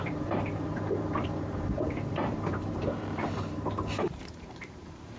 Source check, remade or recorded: remade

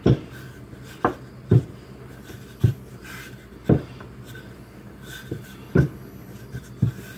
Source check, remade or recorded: recorded